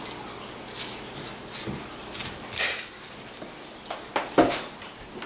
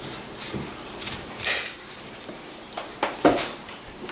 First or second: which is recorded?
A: first